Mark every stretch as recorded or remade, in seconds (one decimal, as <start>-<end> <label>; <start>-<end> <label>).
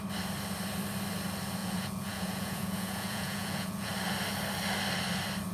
0.0-1.6 recorded; 1.6-3.9 remade; 3.9-5.5 recorded